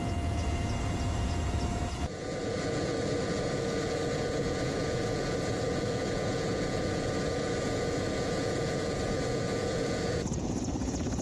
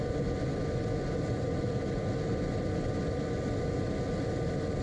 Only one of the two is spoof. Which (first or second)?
first